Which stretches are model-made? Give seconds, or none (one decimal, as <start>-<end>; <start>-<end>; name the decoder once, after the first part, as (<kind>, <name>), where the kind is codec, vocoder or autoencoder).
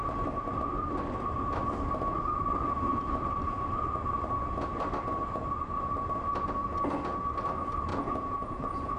2.9-3.6 (vocoder, Vocos); 7.9-9.0